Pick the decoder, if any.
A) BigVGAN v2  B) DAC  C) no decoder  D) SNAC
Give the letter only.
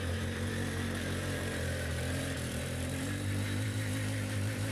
A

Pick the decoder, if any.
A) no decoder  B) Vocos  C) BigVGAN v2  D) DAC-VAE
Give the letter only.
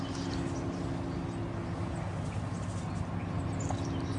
A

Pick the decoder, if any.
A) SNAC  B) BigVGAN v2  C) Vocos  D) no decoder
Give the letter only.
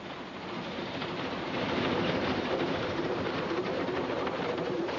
B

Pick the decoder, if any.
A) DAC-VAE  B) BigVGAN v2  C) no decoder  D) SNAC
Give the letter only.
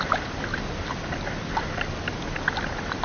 C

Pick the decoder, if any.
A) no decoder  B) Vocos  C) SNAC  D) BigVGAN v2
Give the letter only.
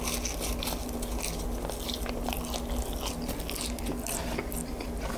A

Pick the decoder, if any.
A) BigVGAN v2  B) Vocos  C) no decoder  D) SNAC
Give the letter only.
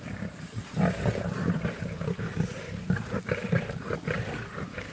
A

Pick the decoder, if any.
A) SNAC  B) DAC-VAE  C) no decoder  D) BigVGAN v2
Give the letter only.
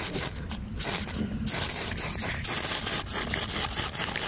C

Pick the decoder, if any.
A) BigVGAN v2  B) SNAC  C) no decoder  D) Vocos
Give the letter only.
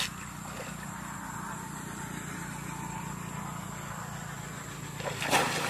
C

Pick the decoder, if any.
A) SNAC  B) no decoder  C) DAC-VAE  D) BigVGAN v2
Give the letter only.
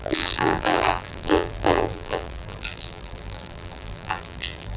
D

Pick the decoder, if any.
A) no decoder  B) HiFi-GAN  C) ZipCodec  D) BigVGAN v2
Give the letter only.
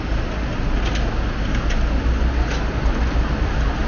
A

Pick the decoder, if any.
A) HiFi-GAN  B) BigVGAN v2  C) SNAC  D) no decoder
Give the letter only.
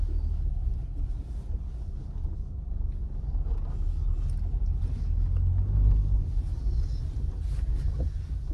D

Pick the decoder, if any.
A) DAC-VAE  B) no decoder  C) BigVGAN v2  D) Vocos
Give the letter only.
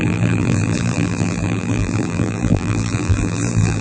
C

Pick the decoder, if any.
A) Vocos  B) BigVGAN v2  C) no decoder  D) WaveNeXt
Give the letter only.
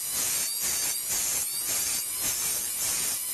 C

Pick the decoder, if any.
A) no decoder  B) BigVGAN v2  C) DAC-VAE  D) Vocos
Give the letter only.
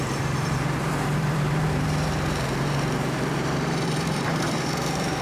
B